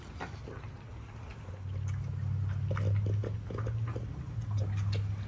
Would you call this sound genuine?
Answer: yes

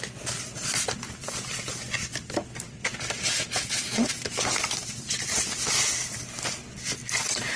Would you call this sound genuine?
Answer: yes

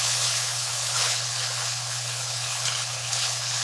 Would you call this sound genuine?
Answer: no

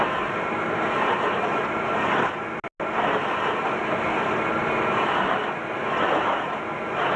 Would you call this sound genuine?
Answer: yes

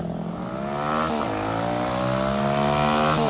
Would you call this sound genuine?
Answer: yes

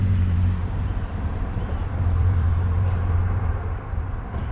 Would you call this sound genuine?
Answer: no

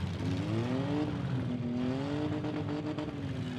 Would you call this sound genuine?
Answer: yes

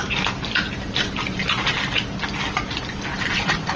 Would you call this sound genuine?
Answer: yes